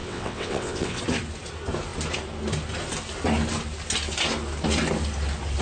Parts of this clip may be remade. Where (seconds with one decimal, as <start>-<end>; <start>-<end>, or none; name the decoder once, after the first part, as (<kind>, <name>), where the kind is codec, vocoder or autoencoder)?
0.0-1.0 (vocoder, WaveNeXt)